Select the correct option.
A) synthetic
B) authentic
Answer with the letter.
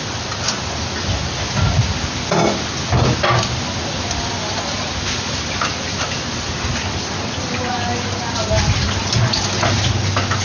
B